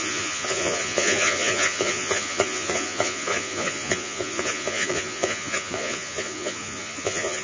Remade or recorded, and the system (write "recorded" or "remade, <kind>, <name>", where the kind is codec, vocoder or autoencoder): remade, vocoder, Vocos